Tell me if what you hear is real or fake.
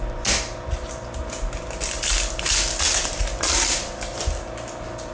real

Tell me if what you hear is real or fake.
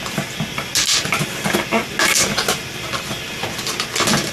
real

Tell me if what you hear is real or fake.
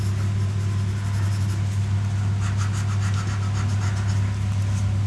real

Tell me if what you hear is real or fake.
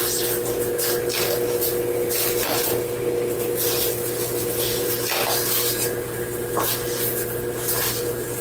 real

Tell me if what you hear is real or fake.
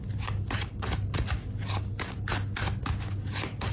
real